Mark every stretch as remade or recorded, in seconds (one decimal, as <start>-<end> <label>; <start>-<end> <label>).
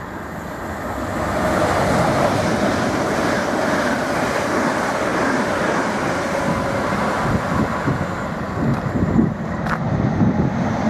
0.0-5.1 recorded; 5.1-6.4 remade; 6.4-8.7 recorded; 8.7-9.6 remade; 9.6-10.9 recorded